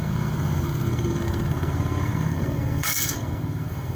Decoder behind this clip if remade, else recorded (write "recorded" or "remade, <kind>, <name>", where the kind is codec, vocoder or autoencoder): remade, codec, SNAC